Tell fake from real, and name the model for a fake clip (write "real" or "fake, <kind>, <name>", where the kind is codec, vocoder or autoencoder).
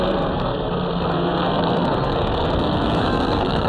fake, codec, SNAC